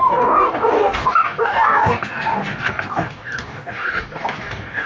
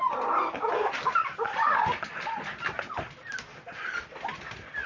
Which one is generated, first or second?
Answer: first